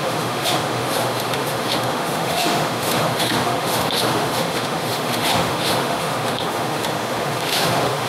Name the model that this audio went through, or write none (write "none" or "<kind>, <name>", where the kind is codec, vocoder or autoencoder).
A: autoencoder, DAC-VAE